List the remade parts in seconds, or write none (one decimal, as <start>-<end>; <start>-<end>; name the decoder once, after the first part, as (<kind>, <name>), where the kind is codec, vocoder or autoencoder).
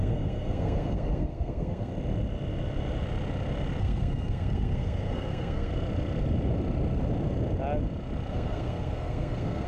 0.0-1.9 (codec, SNAC); 3.8-5.7; 8.3-9.7